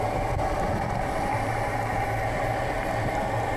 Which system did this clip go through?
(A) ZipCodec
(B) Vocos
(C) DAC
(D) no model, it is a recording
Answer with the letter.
D